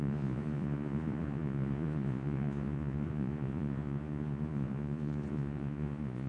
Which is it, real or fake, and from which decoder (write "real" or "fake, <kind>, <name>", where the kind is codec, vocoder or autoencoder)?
fake, vocoder, Vocos